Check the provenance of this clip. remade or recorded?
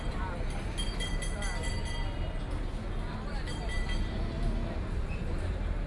recorded